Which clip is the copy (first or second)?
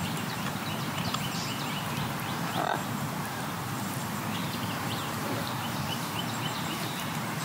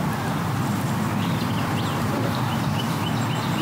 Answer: first